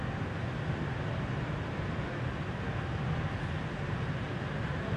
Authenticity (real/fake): real